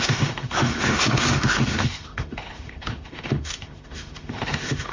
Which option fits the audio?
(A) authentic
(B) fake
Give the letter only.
B